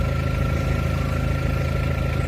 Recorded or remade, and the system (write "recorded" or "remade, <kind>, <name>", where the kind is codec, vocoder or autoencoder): recorded